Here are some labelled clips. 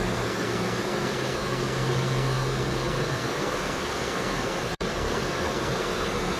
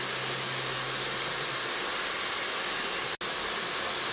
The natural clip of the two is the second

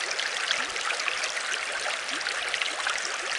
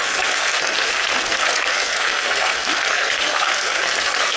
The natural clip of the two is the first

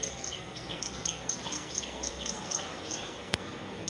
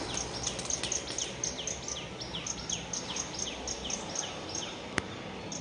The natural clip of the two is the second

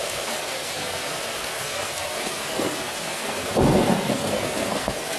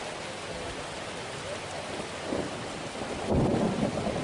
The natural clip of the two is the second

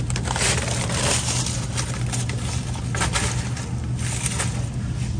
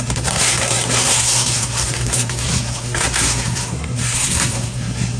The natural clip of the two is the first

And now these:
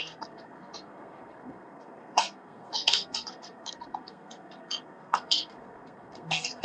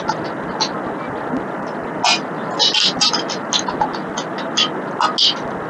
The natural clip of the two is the second